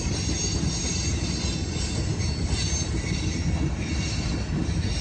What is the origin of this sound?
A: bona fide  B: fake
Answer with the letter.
A